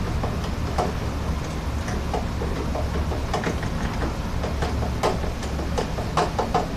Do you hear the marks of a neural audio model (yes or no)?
no